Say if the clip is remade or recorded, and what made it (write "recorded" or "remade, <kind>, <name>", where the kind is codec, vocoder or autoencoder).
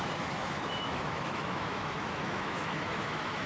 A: remade, autoencoder, DAC-VAE